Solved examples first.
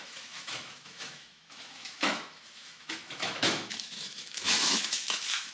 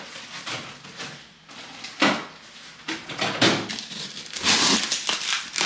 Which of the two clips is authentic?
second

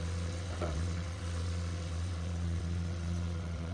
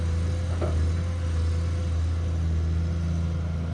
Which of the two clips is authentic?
second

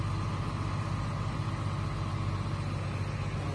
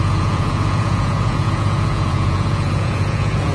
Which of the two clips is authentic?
first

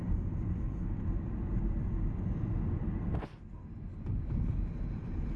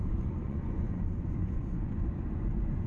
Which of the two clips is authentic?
first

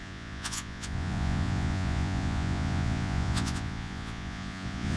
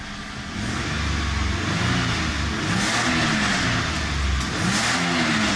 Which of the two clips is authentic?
second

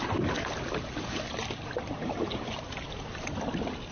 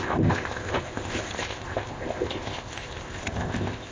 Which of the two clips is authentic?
first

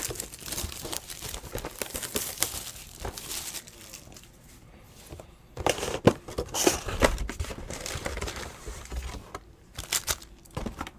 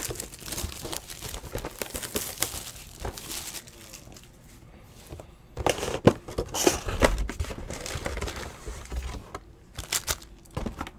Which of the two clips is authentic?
second